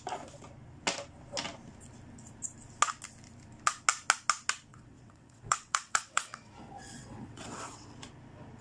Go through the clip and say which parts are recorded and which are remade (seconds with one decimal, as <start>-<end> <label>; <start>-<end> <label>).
0.0-4.7 recorded; 4.7-7.9 remade; 7.9-8.6 recorded